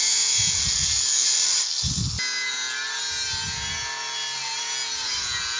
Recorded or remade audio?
recorded